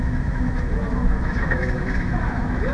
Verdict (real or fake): fake